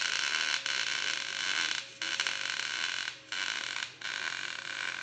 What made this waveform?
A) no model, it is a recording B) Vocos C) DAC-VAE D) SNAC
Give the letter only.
A